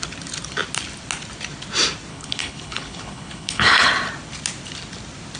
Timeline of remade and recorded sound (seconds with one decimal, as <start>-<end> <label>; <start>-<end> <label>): 0.0-2.1 recorded; 2.1-3.9 remade; 3.9-5.4 recorded